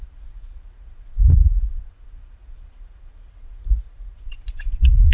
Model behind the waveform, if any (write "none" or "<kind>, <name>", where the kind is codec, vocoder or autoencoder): vocoder, Vocos